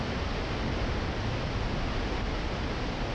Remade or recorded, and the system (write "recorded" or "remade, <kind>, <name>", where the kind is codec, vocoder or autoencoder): recorded